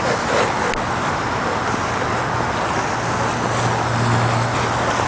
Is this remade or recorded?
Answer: recorded